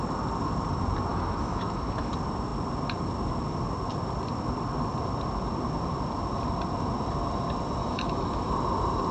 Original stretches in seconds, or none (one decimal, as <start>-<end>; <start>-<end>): 0.0-1.1; 2.1-7.8; 8.5-9.1